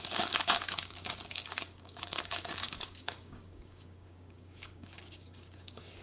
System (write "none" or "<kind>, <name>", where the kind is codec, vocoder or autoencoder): codec, DAC